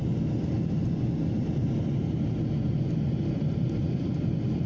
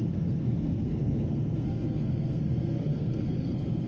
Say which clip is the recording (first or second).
first